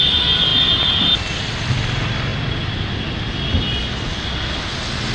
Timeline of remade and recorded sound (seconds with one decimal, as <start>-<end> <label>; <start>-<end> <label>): 0.0-5.1 recorded